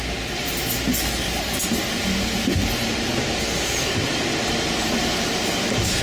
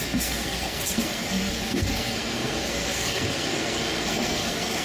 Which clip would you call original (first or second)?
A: first